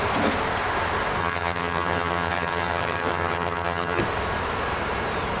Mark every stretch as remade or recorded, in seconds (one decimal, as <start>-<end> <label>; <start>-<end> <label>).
0.0-1.2 recorded; 1.2-4.0 remade; 4.0-5.4 recorded